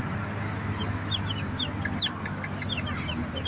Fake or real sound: real